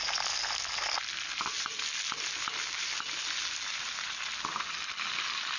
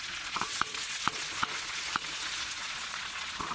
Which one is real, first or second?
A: first